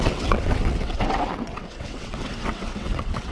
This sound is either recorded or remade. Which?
remade